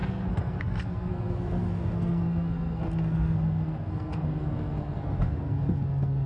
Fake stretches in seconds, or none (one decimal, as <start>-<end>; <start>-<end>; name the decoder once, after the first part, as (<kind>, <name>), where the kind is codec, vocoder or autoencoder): 0.0-6.3 (codec, SNAC)